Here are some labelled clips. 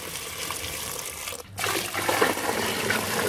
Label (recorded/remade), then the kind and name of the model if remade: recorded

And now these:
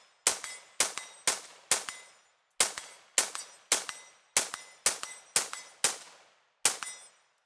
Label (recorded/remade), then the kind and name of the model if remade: recorded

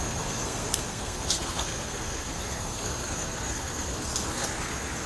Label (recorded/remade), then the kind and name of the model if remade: remade, codec, SNAC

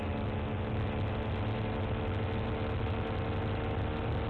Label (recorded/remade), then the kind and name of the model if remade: recorded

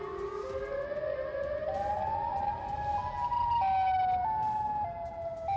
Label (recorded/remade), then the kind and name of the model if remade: recorded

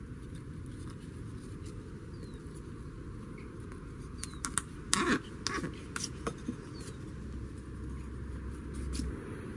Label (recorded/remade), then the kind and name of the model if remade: recorded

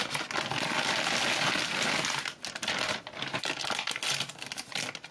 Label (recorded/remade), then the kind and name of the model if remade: recorded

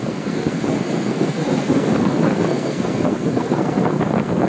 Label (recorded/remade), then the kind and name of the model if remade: remade, codec, SNAC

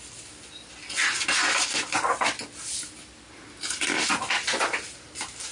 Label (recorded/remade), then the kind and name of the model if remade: recorded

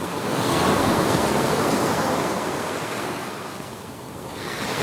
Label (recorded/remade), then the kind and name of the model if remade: remade, codec, SNAC